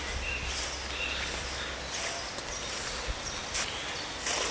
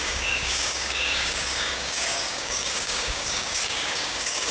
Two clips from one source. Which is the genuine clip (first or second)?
first